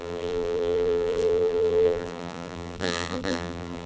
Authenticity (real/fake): fake